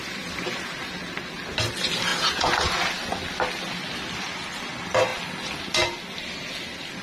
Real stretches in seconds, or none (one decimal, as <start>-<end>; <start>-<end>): 0.0-2.1; 2.7-7.0